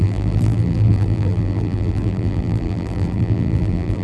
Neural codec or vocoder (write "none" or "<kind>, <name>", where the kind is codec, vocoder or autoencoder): vocoder, BigVGAN v2